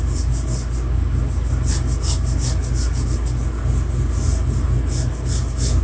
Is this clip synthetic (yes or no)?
no